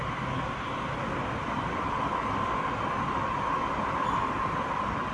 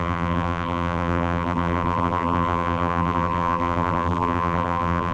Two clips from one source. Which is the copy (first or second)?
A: second